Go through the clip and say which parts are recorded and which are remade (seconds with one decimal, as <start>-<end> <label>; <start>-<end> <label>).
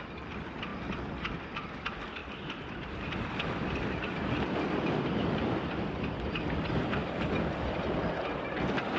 0.0-2.2 recorded; 2.2-3.1 remade; 3.1-9.0 recorded